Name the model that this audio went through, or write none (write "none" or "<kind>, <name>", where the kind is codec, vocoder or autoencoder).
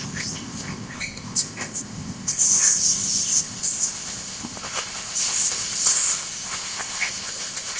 codec, ZipCodec